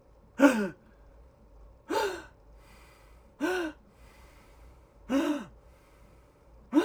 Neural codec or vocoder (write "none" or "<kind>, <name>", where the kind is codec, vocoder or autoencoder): vocoder, BigVGAN v2